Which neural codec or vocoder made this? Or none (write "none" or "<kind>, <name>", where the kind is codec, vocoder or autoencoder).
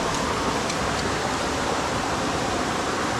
none